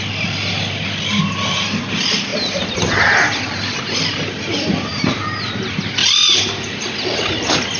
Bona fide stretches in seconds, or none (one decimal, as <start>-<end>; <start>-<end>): 0.0-6.0; 6.8-7.8

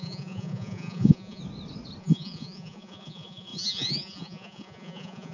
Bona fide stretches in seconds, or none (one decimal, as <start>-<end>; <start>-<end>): 1.4-2.0